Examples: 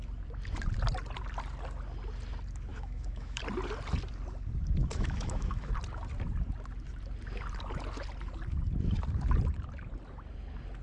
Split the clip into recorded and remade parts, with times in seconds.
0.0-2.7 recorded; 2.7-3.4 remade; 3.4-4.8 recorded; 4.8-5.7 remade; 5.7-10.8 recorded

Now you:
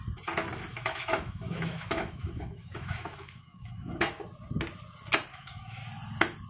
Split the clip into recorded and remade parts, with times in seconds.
0.0-0.7 recorded; 0.7-4.2 remade; 4.2-5.3 recorded; 5.3-5.8 remade; 5.8-6.5 recorded

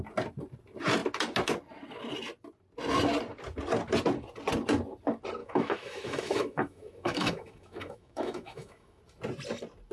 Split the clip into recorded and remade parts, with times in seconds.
0.0-5.4 recorded; 5.4-9.0 remade; 9.0-9.9 recorded

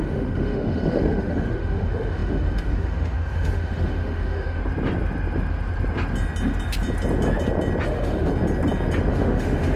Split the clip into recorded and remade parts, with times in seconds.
0.0-4.6 remade; 4.6-7.9 recorded; 7.9-8.3 remade; 8.3-9.1 recorded; 9.1-9.8 remade